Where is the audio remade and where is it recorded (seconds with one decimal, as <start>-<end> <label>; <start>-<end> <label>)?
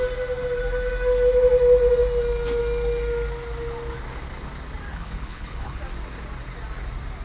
0.0-4.9 recorded; 4.9-5.8 remade; 5.8-7.2 recorded